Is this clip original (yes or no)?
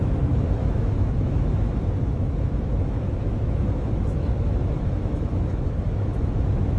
no